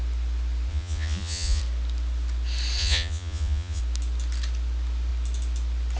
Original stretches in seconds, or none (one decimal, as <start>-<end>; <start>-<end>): 0.0-0.7; 1.6-2.8; 3.8-6.0